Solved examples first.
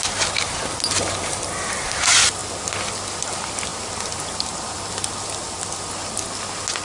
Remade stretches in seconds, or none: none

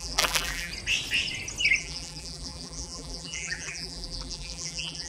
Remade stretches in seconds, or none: 0.0-0.7; 1.8-5.1

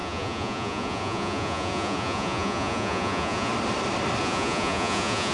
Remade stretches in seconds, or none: 0.0-3.5; 4.2-5.3

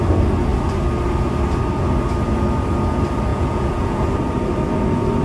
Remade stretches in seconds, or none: 3.3-4.0

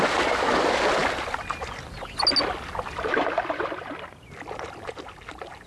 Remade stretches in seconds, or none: none

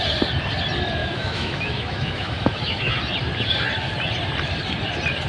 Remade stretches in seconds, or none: 1.0-3.0